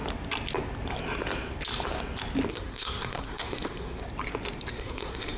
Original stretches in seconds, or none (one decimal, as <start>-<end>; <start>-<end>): 0.0-2.5; 4.0-4.7